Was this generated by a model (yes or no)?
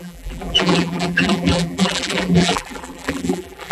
yes